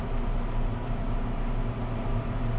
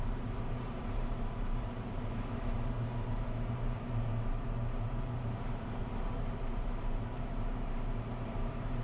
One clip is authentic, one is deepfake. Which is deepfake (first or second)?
second